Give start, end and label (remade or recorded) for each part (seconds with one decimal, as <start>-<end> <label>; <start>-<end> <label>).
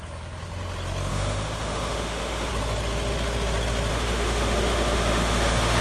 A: 0.0-1.1 recorded; 1.1-2.5 remade; 2.5-3.9 recorded; 3.9-5.8 remade